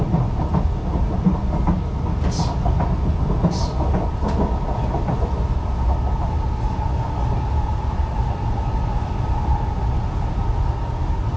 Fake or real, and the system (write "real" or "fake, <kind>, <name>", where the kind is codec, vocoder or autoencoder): real